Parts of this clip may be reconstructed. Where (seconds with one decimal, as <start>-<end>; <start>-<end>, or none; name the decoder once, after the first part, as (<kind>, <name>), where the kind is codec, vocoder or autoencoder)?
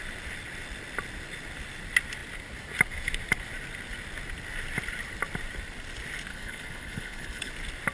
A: 6.3-7.5 (codec, HILCodec)